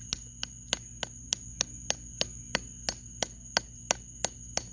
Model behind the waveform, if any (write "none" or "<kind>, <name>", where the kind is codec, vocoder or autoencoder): none